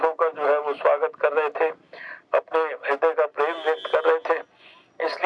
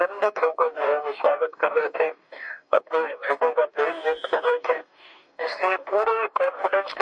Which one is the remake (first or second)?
second